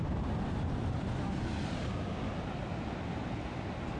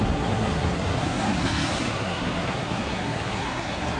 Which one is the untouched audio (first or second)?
first